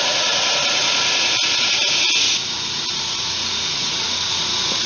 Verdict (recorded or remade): remade